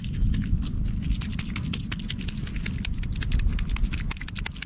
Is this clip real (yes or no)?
yes